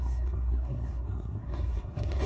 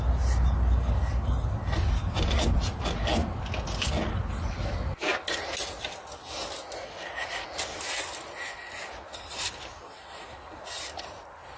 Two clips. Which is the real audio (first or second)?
second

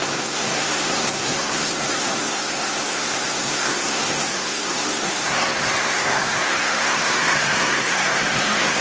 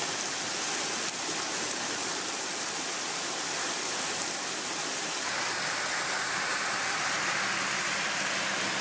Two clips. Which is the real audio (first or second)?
second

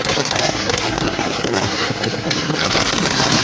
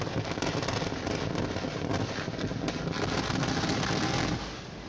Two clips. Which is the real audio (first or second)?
second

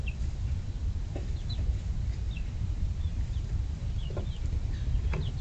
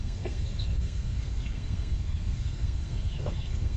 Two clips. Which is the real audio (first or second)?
first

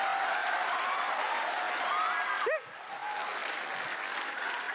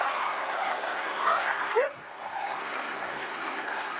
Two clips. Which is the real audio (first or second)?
first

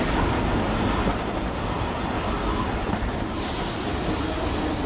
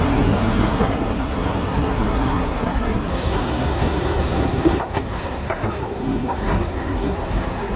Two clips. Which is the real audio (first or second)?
first